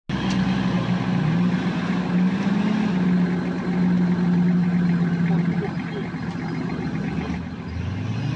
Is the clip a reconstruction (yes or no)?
no